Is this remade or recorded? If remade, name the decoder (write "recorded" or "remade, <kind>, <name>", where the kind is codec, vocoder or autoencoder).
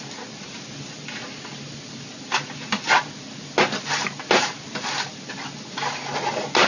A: recorded